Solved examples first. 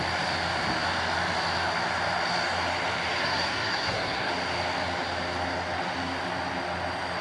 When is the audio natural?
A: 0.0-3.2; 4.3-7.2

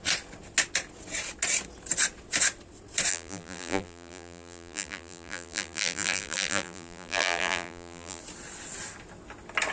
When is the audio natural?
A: 0.0-3.1; 8.2-9.7

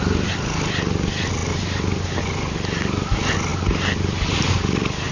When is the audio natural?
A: 0.0-5.1

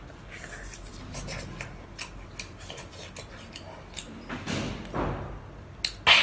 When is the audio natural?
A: 0.0-6.2

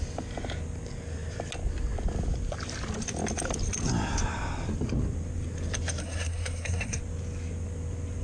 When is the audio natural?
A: 0.0-6.0; 7.0-8.2

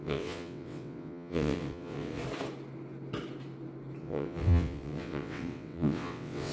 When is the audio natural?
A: 2.2-4.0

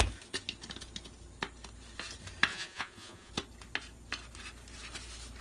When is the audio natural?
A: 0.0-2.5; 3.3-5.4